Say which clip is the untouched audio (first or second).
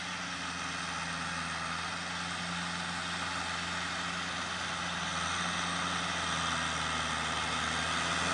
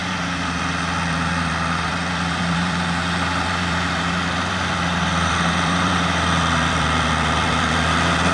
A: first